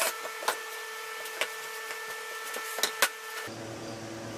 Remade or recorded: recorded